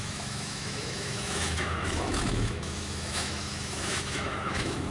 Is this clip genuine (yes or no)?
no